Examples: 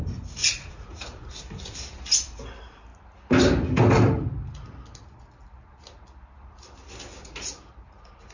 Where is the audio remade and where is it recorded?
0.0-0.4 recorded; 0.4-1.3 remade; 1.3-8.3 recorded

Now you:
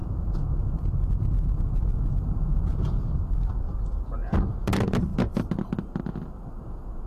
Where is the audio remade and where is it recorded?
0.0-3.1 remade; 3.1-7.1 recorded

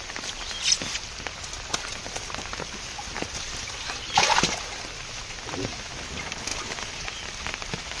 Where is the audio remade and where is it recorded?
0.0-8.0 recorded

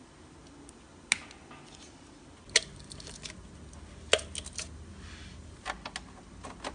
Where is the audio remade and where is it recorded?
0.0-6.7 recorded

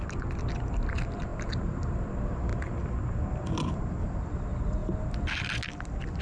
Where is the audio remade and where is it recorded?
0.0-6.2 recorded

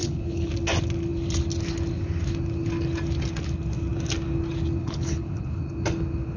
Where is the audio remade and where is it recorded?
0.0-0.5 remade; 0.5-4.8 recorded; 4.8-5.6 remade; 5.6-6.4 recorded

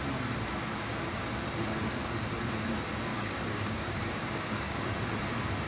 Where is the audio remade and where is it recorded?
0.0-3.1 recorded; 3.1-4.9 remade; 4.9-5.7 recorded

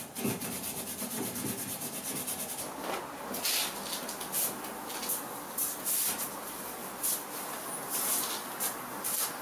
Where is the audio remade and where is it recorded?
0.0-9.4 recorded